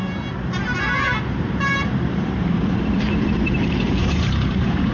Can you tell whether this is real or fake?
fake